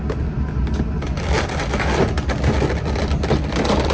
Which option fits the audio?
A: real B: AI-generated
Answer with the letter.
A